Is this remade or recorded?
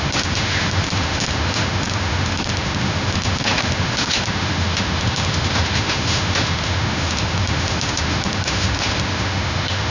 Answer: remade